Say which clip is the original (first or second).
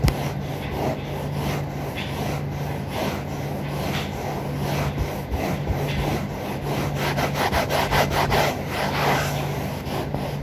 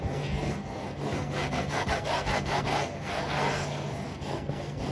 first